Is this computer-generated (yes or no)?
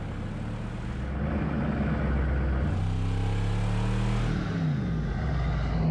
no